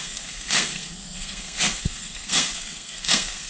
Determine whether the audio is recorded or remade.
remade